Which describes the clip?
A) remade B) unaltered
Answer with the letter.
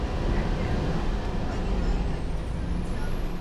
B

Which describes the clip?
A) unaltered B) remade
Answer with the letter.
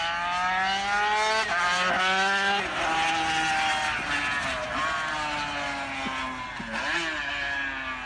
A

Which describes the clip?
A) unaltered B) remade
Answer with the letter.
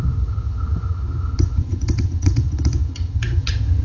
B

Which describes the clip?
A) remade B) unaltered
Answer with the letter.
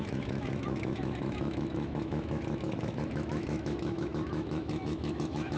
A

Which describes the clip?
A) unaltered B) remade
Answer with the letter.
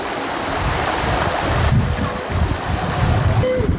A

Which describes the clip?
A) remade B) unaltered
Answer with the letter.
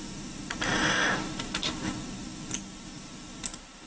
B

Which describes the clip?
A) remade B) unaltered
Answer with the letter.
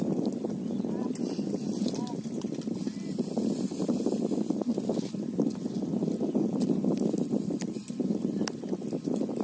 B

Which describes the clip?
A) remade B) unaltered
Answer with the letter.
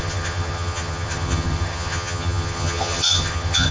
A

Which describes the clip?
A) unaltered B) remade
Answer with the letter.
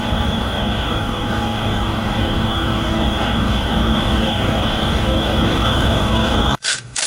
B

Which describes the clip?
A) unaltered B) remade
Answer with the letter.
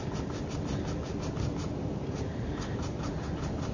A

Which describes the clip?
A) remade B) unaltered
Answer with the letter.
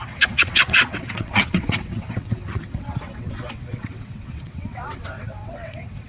A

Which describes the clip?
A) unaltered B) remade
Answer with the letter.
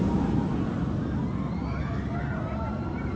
A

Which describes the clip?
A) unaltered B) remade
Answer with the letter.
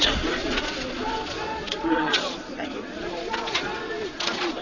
B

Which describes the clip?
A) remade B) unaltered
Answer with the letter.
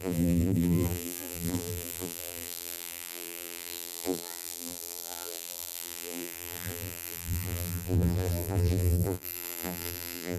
A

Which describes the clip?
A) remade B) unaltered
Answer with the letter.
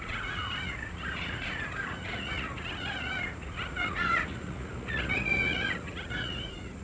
A